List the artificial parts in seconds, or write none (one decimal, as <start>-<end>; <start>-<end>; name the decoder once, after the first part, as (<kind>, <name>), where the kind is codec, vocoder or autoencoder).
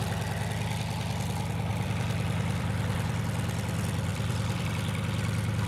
1.7-3.2 (vocoder, BigVGAN v2); 4.1-4.7